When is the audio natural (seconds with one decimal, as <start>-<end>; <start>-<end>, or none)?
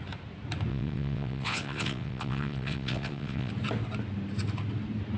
0.0-0.7; 3.5-5.2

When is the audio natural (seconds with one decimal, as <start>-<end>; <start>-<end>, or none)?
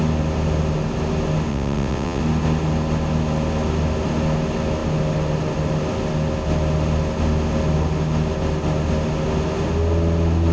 0.0-1.5; 2.2-10.5